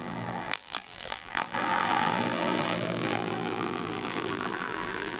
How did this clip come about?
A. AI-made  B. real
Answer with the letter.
A